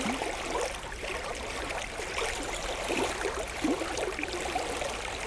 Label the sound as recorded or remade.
recorded